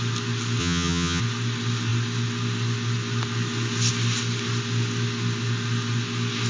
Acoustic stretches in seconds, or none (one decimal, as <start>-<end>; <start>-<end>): 0.0-0.6; 1.2-6.5